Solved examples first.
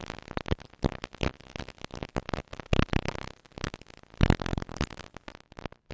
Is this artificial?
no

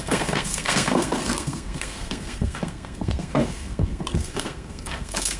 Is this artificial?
yes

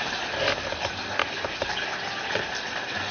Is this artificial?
no